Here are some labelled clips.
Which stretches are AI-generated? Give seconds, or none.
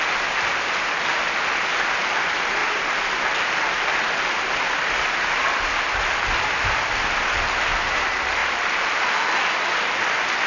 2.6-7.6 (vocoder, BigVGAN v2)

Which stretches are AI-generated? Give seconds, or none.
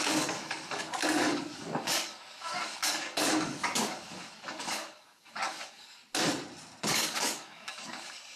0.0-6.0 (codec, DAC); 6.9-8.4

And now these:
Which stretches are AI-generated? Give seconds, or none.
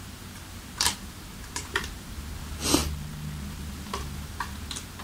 0.0-2.8 (vocoder, BigVGAN v2); 3.4-5.0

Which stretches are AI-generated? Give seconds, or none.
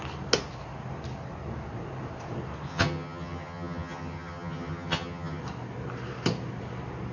2.7-5.4 (vocoder, HiFi-GAN)